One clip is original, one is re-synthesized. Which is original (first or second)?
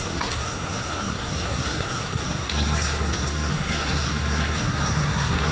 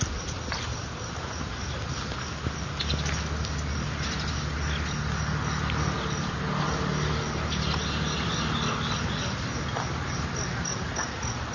second